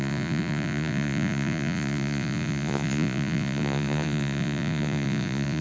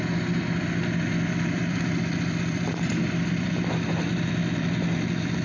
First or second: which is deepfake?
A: first